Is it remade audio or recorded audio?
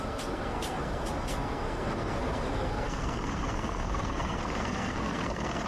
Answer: remade